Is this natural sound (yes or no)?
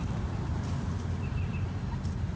yes